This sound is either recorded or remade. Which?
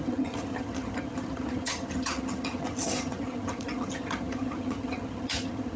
remade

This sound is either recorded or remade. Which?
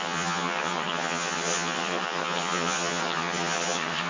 remade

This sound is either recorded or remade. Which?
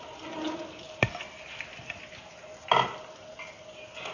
recorded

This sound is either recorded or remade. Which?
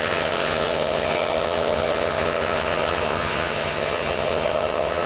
remade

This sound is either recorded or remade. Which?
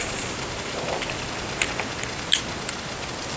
recorded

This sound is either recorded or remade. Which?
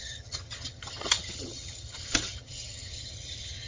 remade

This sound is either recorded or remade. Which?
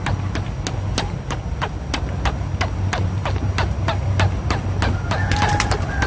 recorded